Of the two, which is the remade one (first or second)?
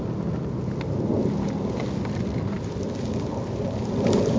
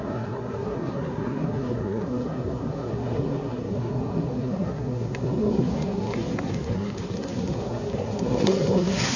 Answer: second